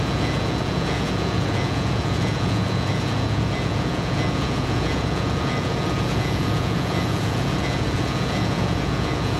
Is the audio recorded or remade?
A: remade